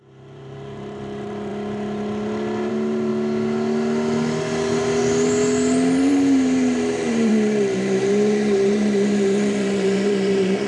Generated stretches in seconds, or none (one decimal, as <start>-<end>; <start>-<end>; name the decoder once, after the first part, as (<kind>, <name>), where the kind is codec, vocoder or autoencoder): 0.0-1.5 (vocoder, BigVGAN v2); 2.7-3.1; 6.0-10.7